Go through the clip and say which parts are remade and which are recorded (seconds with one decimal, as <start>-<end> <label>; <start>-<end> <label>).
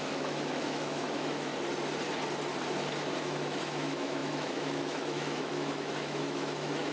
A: 0.0-1.5 remade; 1.5-3.2 recorded; 3.2-6.9 remade